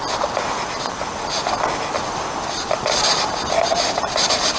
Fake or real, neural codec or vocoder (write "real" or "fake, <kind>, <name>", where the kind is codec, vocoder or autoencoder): real